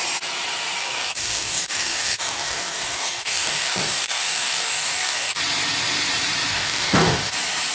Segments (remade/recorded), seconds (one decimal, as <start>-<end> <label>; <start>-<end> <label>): 0.0-0.8 recorded; 0.8-5.4 remade; 5.4-6.5 recorded; 6.5-7.3 remade; 7.3-7.7 recorded